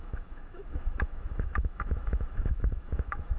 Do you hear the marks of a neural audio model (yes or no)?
yes